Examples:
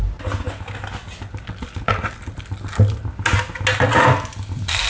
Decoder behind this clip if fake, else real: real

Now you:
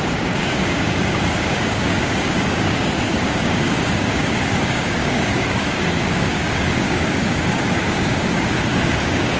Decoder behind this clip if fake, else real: fake, codec, DAC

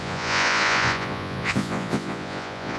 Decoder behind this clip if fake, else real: fake, vocoder, Vocos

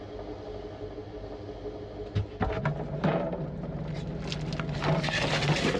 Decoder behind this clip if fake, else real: real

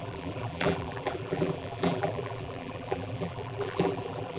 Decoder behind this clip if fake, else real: fake, vocoder, BigVGAN v2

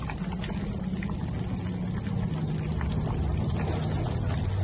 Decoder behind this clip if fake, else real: real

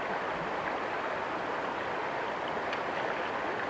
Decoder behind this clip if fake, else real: real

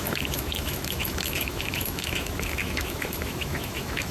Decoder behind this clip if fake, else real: fake, autoencoder, DAC-VAE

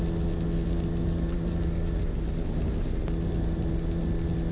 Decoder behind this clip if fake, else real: real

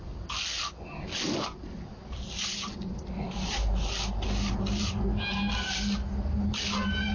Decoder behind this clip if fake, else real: real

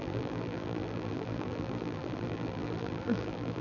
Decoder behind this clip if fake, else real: fake, vocoder, BigVGAN v2